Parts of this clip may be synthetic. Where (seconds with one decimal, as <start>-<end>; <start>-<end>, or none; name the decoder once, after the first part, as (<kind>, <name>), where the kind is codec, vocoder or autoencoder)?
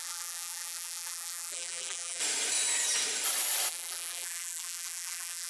0.0-2.2 (vocoder, BigVGAN v2); 3.7-5.5